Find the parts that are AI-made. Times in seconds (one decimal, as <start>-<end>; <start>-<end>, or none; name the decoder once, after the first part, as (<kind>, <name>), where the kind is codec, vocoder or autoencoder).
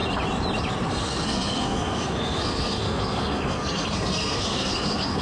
0.9-5.2 (codec, SNAC)